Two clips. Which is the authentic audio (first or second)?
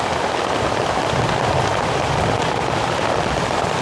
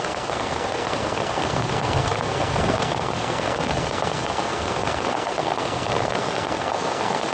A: first